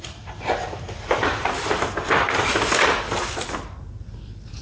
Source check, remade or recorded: remade